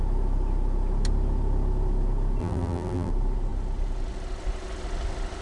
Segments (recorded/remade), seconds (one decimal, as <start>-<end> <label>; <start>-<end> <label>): 0.0-2.4 recorded; 2.4-3.1 remade; 3.1-5.4 recorded